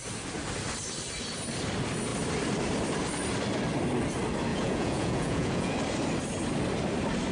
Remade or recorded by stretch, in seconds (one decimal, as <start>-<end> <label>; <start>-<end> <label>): 0.0-4.5 recorded; 4.5-5.7 remade; 5.7-7.3 recorded